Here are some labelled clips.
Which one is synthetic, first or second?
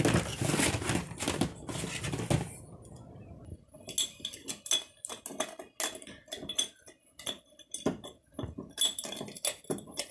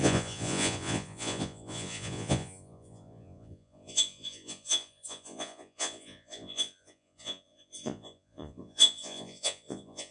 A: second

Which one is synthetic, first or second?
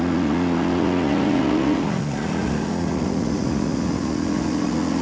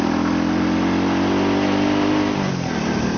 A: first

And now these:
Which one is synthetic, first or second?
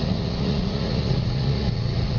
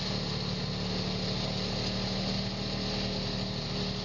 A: first